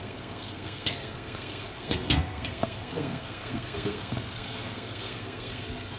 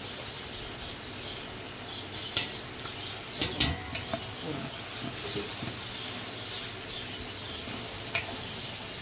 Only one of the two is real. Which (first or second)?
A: second